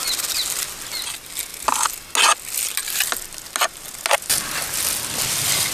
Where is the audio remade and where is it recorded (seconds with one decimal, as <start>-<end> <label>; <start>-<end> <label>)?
0.0-5.7 recorded